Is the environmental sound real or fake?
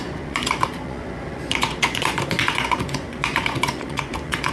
fake